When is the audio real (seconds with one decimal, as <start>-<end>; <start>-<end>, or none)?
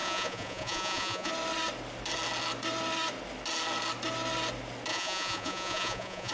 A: 1.3-4.9